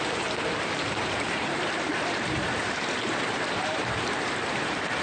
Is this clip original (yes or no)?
no